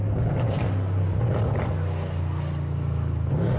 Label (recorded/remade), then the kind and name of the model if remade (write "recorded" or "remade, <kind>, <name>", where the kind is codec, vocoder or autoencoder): recorded